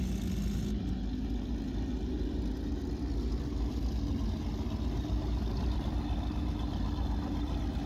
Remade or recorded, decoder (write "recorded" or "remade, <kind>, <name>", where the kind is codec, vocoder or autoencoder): recorded